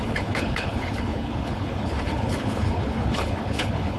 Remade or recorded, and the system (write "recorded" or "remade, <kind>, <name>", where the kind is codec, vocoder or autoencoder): remade, codec, HILCodec